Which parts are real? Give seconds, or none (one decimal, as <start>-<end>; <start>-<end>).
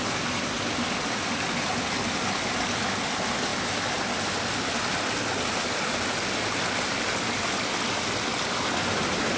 0.0-9.4